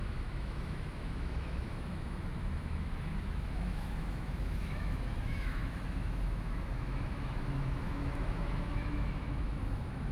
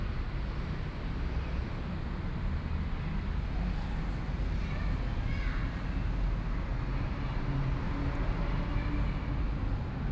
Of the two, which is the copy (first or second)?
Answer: first